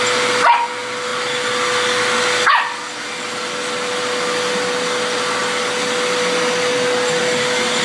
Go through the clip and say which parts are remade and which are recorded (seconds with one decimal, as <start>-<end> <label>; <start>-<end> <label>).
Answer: 0.0-7.8 recorded